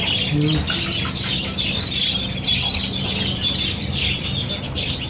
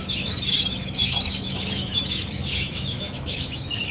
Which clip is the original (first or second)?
first